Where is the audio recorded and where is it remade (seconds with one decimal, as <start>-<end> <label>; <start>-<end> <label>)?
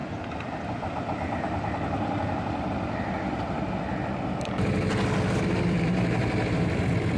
0.0-7.2 recorded